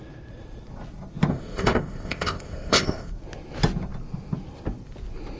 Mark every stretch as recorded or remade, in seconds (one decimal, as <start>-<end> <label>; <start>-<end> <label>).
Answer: 0.0-1.3 recorded; 1.3-3.1 remade; 3.1-5.4 recorded